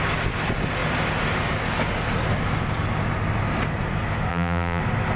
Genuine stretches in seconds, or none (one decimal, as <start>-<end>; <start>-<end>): 0.0-4.3; 4.8-5.2